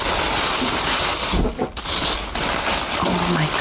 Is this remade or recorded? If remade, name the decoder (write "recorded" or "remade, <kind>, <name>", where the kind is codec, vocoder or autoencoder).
recorded